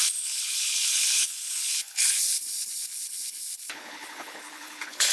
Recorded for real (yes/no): no